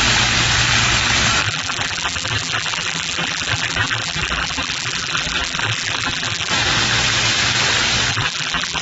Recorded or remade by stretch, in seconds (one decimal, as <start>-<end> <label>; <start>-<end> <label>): 0.0-1.4 recorded; 1.4-6.5 remade; 6.5-8.1 recorded; 8.1-8.8 remade